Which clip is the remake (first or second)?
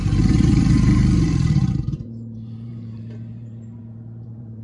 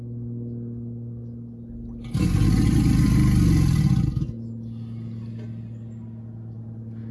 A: first